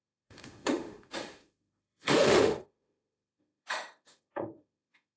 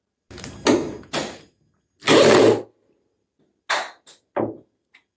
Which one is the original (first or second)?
second